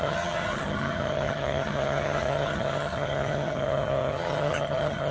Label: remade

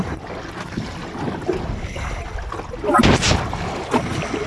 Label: recorded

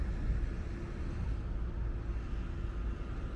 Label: recorded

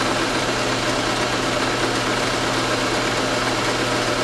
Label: recorded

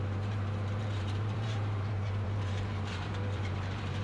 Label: remade